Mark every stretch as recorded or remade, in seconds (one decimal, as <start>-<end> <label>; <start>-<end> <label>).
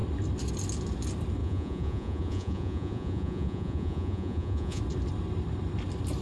0.0-1.4 recorded; 1.4-4.8 remade; 4.8-6.2 recorded